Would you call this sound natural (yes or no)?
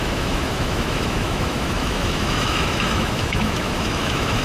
no